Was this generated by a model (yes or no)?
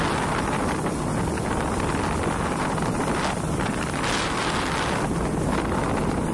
no